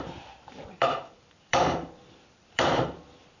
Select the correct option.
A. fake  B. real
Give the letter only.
A